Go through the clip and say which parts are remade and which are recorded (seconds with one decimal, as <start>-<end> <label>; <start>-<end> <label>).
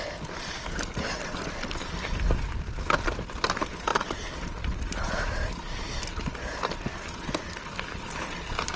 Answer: 0.0-8.8 recorded